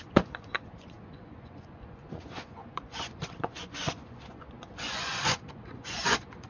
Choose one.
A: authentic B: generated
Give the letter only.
B